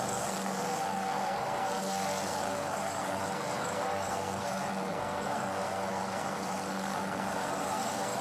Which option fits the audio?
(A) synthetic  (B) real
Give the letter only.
A